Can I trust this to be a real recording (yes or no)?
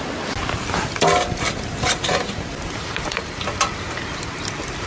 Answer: yes